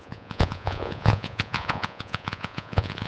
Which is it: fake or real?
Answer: fake